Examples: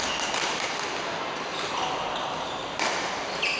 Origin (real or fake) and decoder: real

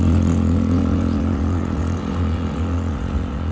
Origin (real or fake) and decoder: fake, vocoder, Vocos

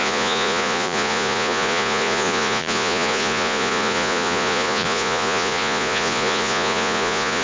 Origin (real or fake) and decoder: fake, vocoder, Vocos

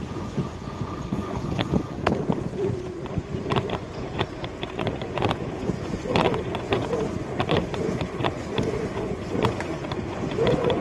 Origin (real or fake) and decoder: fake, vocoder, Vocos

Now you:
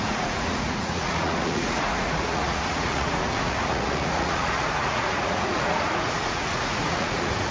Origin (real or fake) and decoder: fake, vocoder, Vocos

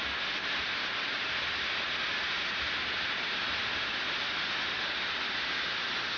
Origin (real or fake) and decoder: real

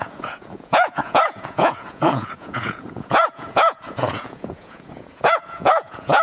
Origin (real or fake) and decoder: fake, vocoder, Vocos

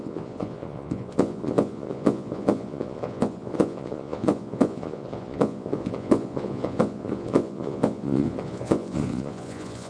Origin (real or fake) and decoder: fake, vocoder, Vocos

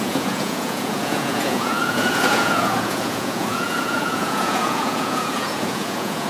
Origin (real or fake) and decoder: fake, vocoder, Vocos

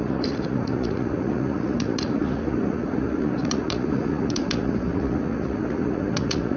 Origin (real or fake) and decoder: fake, vocoder, Vocos